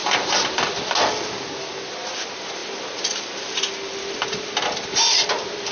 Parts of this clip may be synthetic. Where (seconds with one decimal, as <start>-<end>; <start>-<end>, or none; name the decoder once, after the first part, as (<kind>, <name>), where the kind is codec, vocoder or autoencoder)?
none